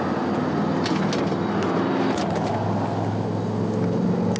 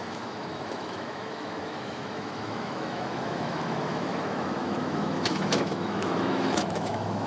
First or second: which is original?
first